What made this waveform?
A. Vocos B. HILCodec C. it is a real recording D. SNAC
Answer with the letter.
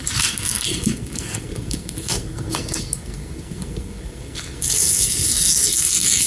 D